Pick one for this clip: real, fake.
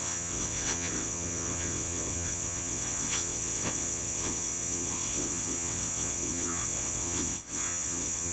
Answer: fake